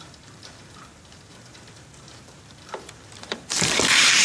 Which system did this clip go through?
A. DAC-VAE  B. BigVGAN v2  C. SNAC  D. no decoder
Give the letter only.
B